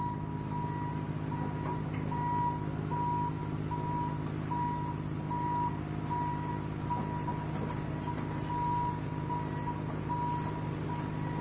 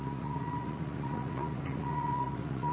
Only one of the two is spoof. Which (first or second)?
second